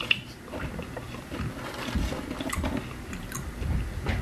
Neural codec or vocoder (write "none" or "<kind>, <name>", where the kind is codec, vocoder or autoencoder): vocoder, BigVGAN v2